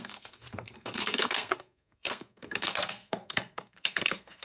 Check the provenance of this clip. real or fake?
fake